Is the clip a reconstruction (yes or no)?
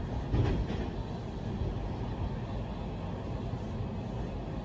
no